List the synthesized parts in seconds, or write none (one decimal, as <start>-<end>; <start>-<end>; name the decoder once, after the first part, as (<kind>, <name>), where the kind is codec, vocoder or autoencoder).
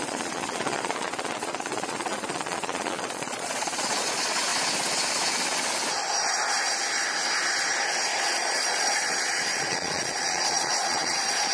0.0-4.5 (vocoder, Vocos); 8.2-11.5